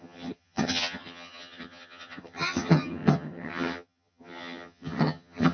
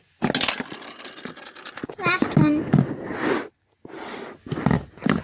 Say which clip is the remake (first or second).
first